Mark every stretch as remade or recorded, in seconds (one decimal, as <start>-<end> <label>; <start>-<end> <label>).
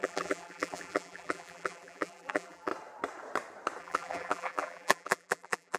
0.0-2.7 remade; 2.7-3.8 recorded; 3.8-5.8 remade